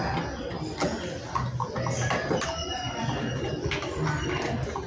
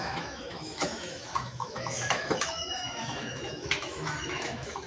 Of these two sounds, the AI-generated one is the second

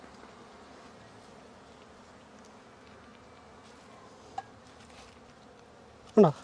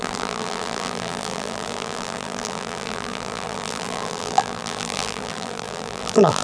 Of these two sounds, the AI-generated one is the second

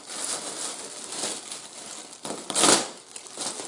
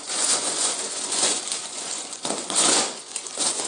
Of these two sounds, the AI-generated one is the second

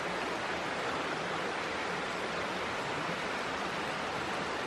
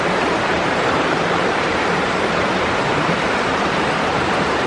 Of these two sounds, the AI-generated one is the second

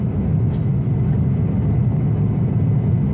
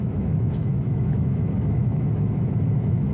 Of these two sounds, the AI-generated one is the second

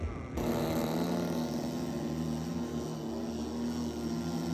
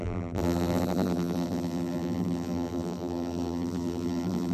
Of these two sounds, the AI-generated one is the second